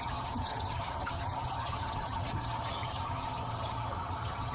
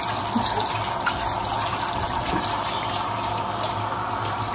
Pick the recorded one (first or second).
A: second